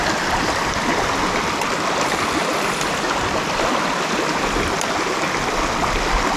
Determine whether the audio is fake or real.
real